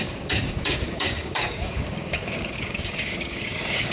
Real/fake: fake